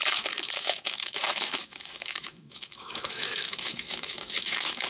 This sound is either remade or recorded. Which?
remade